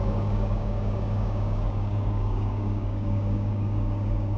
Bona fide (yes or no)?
no